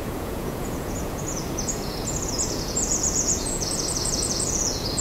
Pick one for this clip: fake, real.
fake